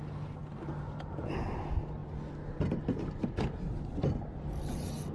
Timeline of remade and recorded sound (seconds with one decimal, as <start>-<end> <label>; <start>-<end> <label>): 0.0-5.1 recorded

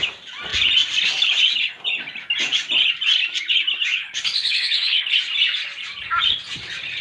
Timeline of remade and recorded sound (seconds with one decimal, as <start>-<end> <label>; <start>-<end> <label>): 0.0-4.0 recorded; 4.0-5.2 remade; 5.2-7.0 recorded

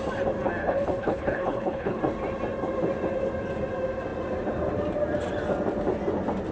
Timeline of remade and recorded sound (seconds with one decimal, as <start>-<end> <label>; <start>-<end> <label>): 0.0-0.6 recorded; 0.6-2.0 remade; 2.0-6.5 recorded

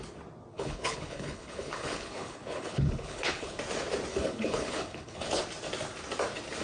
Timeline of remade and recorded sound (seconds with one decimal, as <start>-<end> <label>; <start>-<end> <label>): 0.0-0.5 recorded; 0.5-3.6 remade; 3.6-4.1 recorded; 4.1-5.4 remade; 5.4-6.6 recorded

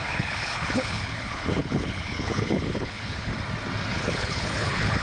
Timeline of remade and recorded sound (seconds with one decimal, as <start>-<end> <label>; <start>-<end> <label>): 0.0-3.3 remade; 3.3-3.9 recorded; 3.9-5.0 remade

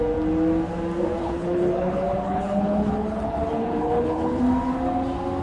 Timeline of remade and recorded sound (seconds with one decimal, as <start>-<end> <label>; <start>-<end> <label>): 0.0-1.2 recorded; 1.2-4.4 remade; 4.4-5.4 recorded